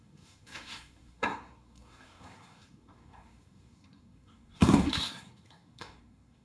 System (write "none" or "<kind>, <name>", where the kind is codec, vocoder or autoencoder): codec, SNAC